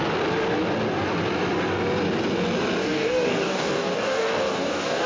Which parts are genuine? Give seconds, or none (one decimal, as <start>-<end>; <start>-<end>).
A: 0.0-2.8